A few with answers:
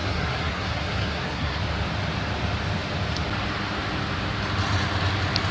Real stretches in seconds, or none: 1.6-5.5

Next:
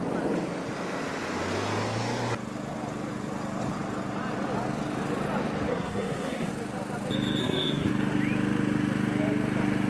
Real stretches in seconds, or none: 0.0-5.7; 6.5-7.4; 7.9-9.9

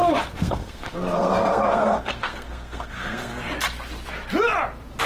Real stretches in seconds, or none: 3.3-5.1

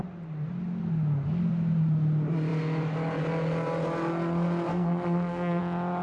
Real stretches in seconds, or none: 0.0-4.7; 5.6-6.0

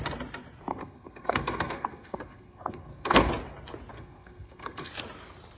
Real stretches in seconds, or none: 0.0-0.7; 3.3-3.9; 4.9-5.6

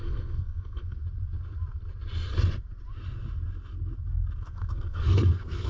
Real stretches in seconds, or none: 1.0-4.4